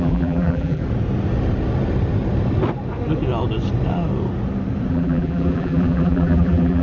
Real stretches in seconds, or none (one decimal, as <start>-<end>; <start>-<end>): 0.8-4.9